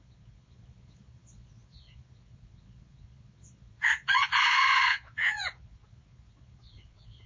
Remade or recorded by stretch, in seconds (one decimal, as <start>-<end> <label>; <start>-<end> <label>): 0.0-7.3 remade